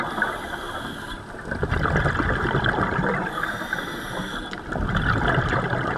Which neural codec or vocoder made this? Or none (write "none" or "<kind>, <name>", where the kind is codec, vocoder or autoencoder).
none